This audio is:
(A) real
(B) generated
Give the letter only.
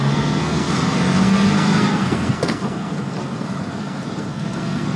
B